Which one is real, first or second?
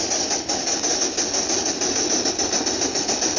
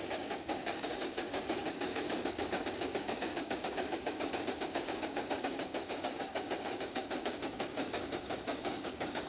first